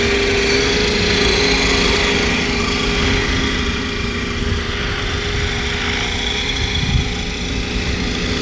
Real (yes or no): yes